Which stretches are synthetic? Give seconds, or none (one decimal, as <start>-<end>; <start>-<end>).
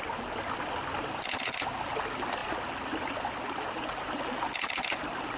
none